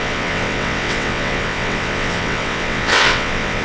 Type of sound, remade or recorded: remade